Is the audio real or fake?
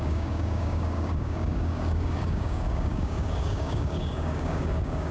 fake